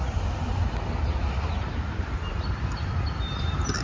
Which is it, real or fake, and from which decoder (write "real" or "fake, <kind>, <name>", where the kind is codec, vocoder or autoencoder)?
real